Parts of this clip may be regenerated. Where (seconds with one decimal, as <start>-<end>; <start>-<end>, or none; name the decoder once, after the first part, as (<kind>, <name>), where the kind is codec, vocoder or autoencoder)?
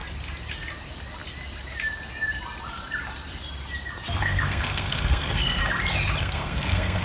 4.2-5.6 (codec, SNAC); 6.2-7.0